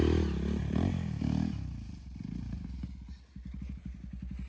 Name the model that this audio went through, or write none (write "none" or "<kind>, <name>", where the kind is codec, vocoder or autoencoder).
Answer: none